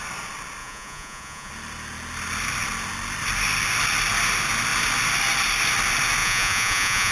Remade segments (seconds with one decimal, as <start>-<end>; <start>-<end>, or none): 0.6-1.5; 6.2-7.1